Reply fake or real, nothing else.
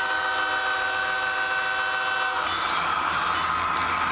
real